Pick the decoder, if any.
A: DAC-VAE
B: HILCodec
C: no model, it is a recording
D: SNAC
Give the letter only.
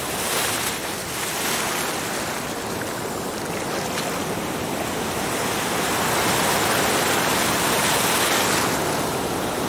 C